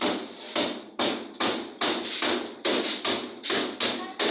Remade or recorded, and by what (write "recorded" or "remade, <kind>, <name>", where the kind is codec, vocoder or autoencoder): recorded